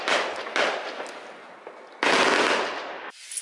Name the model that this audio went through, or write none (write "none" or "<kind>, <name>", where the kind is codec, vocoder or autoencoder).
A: none